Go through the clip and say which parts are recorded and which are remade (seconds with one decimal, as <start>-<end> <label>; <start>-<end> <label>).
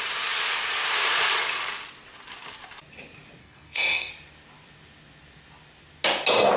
0.0-3.4 recorded; 3.4-4.1 remade; 4.1-6.6 recorded